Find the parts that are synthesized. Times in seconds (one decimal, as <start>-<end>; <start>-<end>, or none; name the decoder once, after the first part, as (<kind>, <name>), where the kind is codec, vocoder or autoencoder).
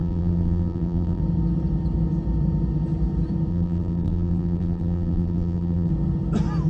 0.0-1.2 (vocoder, BigVGAN v2); 3.5-5.9